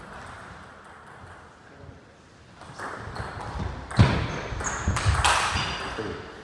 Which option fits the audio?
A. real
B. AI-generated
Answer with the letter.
A